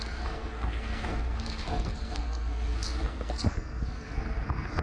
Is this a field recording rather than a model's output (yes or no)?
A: no